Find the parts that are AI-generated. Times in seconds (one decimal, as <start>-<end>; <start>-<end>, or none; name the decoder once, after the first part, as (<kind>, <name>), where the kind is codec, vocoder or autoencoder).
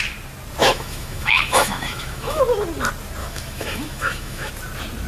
0.6-2.4 (autoencoder, DAC-VAE); 3.2-4.5